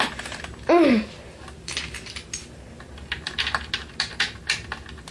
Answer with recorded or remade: recorded